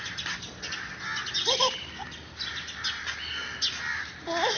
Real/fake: real